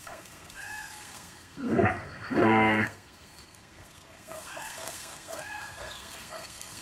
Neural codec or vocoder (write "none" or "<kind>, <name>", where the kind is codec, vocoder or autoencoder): codec, SNAC